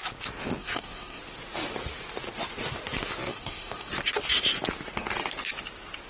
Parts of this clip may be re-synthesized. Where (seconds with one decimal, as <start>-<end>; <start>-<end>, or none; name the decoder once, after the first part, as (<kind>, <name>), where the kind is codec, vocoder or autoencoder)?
0.6-1.2 (codec, DAC); 3.3-3.9